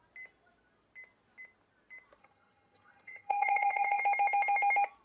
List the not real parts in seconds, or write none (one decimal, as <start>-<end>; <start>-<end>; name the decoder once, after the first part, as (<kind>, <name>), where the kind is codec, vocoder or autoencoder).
2.2-4.0 (vocoder, HiFi-GAN)